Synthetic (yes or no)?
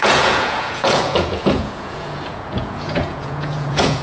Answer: yes